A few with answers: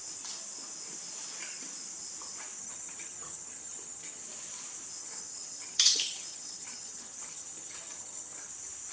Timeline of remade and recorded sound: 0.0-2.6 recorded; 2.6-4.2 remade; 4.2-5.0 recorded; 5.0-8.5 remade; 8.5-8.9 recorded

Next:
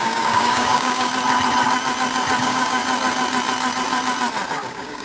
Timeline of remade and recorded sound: 0.0-1.1 remade; 1.1-2.4 recorded; 2.4-2.8 remade; 2.8-4.6 recorded; 4.6-5.0 remade

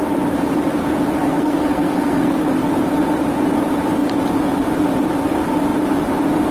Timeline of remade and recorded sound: 0.0-1.2 recorded; 1.2-2.4 remade; 2.4-6.5 recorded

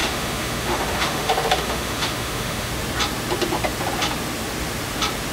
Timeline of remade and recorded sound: 0.0-2.7 remade; 2.7-5.3 recorded

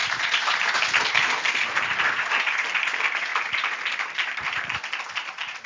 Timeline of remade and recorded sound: 0.0-5.7 recorded

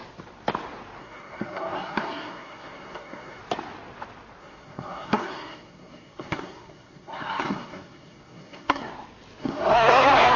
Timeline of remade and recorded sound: 0.0-1.0 recorded; 1.0-3.4 remade; 3.4-4.4 recorded; 4.4-8.9 remade; 8.9-9.4 recorded; 9.4-10.4 remade

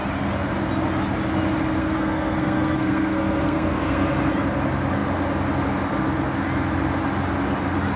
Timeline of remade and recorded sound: 0.0-1.8 recorded; 1.8-4.3 remade; 4.3-8.0 recorded